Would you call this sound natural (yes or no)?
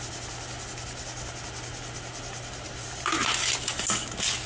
yes